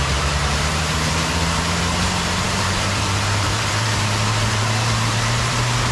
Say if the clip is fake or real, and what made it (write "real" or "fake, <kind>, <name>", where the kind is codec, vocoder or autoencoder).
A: fake, vocoder, BigVGAN v2